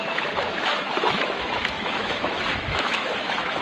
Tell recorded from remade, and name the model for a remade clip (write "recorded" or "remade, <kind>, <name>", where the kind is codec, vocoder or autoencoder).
remade, autoencoder, DAC-VAE